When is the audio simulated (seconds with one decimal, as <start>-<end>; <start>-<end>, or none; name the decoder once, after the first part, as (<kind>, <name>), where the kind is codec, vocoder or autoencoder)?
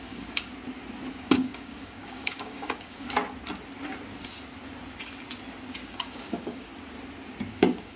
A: 0.0-0.5 (codec, DAC); 1.1-3.2; 5.7-6.7; 7.5-8.0